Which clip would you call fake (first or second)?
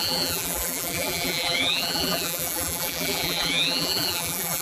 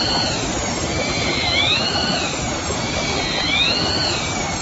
first